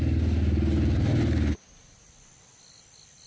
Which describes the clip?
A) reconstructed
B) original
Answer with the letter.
B